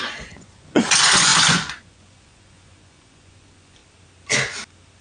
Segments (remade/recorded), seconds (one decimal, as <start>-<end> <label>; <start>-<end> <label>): 0.0-3.8 remade; 3.8-5.0 recorded

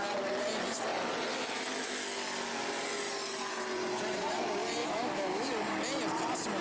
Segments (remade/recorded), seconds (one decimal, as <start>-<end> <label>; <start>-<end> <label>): 0.0-4.8 recorded; 4.8-5.5 remade; 5.5-6.6 recorded

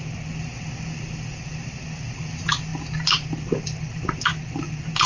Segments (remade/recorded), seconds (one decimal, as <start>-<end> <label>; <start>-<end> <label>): 0.0-5.1 recorded

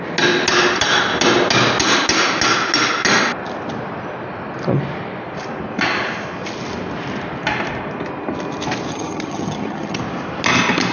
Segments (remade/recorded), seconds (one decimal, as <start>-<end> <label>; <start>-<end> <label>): 0.0-8.9 recorded; 8.9-10.0 remade; 10.0-10.9 recorded

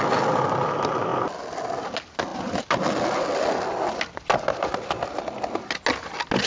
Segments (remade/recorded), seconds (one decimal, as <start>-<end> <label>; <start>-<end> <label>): 0.0-6.5 recorded

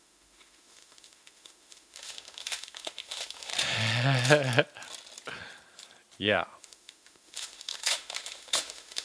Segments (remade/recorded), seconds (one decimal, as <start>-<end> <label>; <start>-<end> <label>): 0.0-3.5 remade; 3.5-6.6 recorded; 6.6-9.0 remade

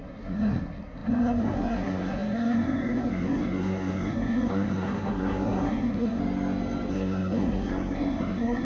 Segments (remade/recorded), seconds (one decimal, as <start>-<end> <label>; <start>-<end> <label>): 0.0-6.2 remade; 6.2-6.9 recorded; 6.9-8.6 remade

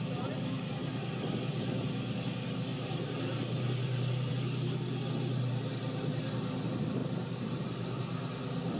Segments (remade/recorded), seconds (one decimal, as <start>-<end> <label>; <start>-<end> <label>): 0.0-2.7 recorded; 2.7-4.3 remade; 4.3-7.0 recorded; 7.0-7.6 remade; 7.6-8.8 recorded